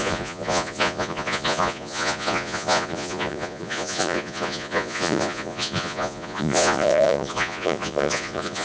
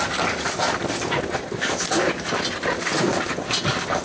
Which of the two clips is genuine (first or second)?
second